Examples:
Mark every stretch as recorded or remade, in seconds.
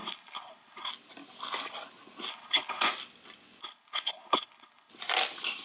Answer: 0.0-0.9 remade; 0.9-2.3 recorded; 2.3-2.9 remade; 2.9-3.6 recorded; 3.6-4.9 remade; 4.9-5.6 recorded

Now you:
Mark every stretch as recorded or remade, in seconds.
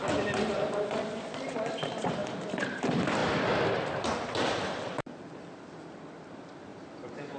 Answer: 0.0-2.2 remade; 2.2-2.8 recorded; 2.8-7.4 remade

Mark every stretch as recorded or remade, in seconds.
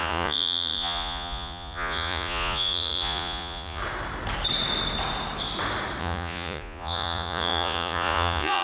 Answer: 0.0-3.8 remade; 3.8-6.0 recorded; 6.0-8.6 remade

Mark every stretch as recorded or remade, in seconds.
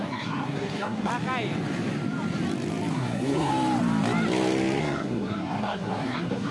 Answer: 0.0-1.1 remade; 1.1-2.9 recorded; 2.9-3.5 remade; 3.5-4.8 recorded; 4.8-6.5 remade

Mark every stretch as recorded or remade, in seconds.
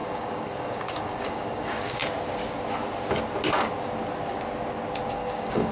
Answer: 0.0-2.0 remade; 2.0-5.1 recorded; 5.1-5.7 remade